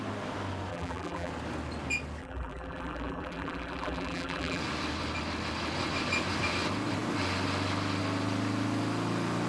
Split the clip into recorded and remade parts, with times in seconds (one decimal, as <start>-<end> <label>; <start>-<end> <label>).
0.0-0.7 recorded; 0.7-1.3 remade; 1.3-2.2 recorded; 2.2-4.6 remade; 4.6-9.5 recorded